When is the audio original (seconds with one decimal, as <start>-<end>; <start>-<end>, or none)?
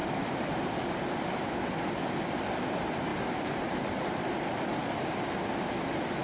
0.0-6.2